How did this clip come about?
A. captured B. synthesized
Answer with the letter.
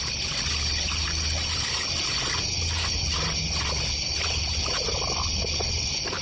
A